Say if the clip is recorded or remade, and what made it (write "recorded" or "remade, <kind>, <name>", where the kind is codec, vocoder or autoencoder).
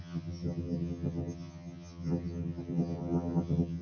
remade, vocoder, HiFi-GAN